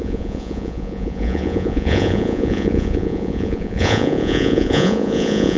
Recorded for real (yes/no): no